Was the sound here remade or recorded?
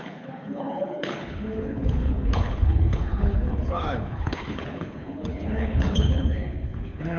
remade